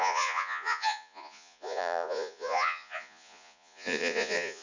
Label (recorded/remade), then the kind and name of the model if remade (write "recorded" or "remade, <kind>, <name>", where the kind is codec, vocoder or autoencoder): remade, vocoder, Vocos